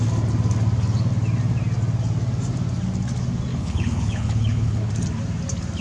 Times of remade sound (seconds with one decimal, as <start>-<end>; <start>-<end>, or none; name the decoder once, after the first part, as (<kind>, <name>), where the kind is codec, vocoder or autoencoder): 3.5-4.9 (codec, HILCodec)